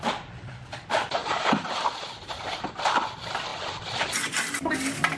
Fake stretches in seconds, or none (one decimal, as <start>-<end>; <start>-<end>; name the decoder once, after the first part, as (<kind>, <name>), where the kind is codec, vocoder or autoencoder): 1.2-2.1 (vocoder, BigVGAN v2)